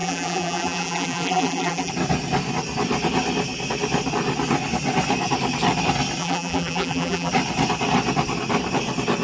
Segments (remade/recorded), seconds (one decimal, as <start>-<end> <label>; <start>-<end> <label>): 0.0-1.9 remade; 1.9-6.2 recorded; 6.2-7.3 remade; 7.3-9.2 recorded

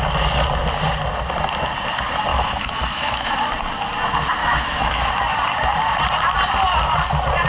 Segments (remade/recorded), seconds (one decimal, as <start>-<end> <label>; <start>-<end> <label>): 0.0-2.3 recorded; 2.3-3.3 remade; 3.3-4.4 recorded; 4.4-5.1 remade; 5.1-7.5 recorded

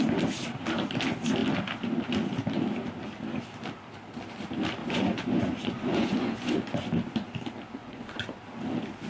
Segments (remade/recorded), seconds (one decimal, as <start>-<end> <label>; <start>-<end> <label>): 0.0-4.8 recorded; 4.8-6.6 remade; 6.6-7.8 recorded; 7.8-8.4 remade; 8.4-9.1 recorded

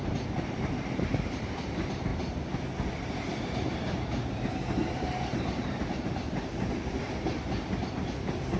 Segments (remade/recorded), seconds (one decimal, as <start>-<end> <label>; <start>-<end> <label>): 0.0-2.1 remade; 2.1-2.9 recorded; 2.9-8.6 remade

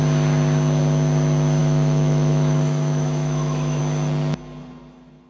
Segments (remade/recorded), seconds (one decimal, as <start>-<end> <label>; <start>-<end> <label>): 0.0-1.6 recorded; 1.6-3.8 remade; 3.8-5.3 recorded

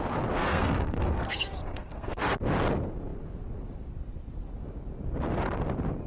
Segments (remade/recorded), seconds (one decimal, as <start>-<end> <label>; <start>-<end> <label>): 0.0-0.4 recorded; 0.4-2.2 remade; 2.2-6.1 recorded

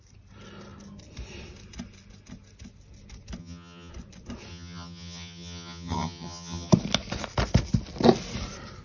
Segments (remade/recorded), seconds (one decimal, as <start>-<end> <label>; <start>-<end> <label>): 0.0-3.4 recorded; 3.4-3.9 remade; 3.9-4.5 recorded; 4.5-6.7 remade; 6.7-8.8 recorded